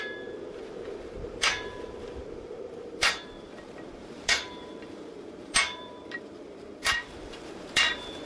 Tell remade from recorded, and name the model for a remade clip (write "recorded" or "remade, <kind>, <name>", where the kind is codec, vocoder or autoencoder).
remade, vocoder, BigVGAN v2